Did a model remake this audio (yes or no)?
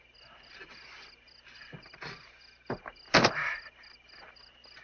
no